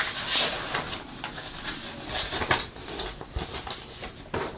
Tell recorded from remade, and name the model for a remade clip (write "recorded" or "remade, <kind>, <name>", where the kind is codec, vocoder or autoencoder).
recorded